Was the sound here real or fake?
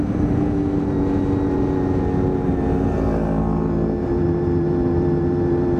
real